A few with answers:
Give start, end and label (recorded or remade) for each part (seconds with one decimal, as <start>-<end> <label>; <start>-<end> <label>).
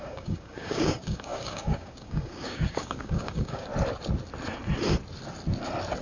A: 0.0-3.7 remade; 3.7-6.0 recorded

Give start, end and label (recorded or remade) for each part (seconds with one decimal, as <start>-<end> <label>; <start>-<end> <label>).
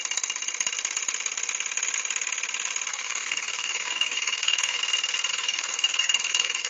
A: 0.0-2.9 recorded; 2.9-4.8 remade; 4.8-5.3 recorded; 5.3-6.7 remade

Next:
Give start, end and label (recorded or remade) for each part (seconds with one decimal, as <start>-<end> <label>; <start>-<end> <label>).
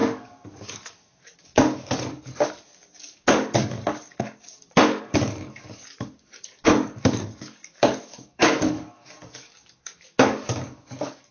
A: 0.0-11.3 remade